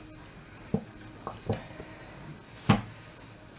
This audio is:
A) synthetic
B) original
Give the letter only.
B